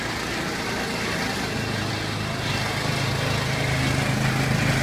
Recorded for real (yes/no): yes